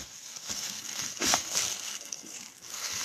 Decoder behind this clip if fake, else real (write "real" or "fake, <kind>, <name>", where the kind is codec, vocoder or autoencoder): fake, codec, SNAC